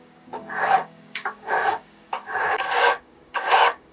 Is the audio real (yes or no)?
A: no